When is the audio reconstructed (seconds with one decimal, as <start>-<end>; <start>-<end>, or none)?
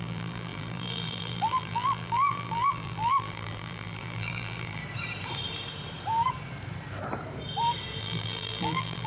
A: 0.0-4.8; 8.0-9.1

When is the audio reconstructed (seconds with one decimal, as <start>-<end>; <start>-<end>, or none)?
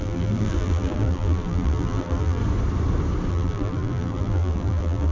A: 0.0-2.4; 3.3-5.1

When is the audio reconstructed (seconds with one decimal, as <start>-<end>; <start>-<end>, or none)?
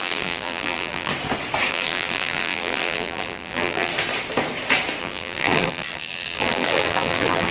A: 0.0-1.1; 1.7-3.9; 5.0-7.5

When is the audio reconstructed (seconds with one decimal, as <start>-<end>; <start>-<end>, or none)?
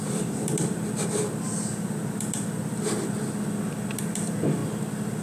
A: 0.0-4.6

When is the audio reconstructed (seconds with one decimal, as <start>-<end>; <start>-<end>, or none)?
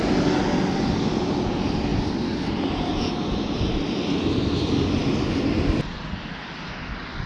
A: none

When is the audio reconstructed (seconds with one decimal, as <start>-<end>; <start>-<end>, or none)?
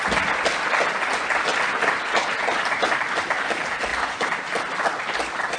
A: 1.5-2.3; 3.9-4.7